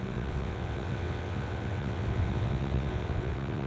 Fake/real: fake